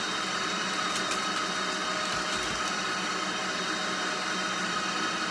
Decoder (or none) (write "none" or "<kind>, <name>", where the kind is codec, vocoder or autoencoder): none